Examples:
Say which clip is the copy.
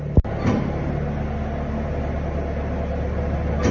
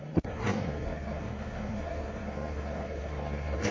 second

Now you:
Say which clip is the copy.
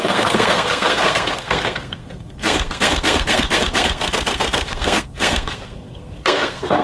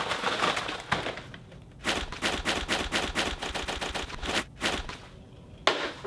first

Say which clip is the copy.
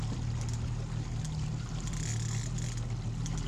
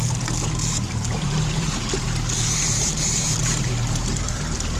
second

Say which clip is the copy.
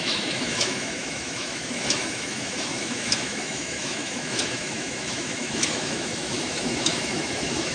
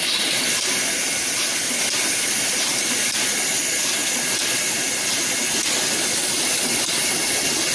first